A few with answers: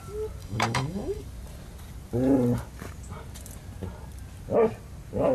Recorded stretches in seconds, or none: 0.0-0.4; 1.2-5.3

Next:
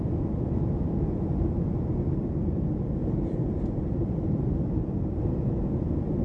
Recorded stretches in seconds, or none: 0.0-3.0; 4.5-6.2